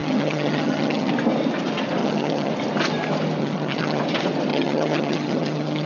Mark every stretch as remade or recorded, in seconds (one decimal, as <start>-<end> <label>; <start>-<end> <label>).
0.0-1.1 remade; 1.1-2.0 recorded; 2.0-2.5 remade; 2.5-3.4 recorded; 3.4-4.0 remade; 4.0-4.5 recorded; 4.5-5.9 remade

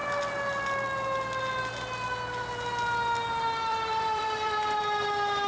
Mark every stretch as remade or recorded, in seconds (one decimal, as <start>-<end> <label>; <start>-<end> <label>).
0.0-3.7 recorded; 3.7-4.8 remade; 4.8-5.5 recorded

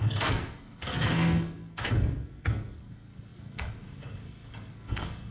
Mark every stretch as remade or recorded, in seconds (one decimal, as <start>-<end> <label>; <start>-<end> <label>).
0.0-5.3 remade

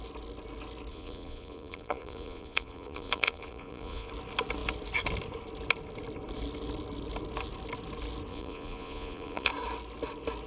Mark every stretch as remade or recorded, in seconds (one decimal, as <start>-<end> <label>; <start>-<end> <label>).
0.0-0.9 recorded; 0.9-4.1 remade; 4.1-8.3 recorded; 8.3-9.5 remade; 9.5-10.5 recorded